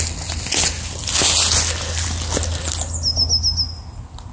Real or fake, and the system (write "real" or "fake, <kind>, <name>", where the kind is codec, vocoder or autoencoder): real